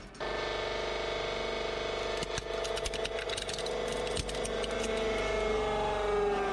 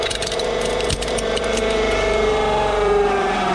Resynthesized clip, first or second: second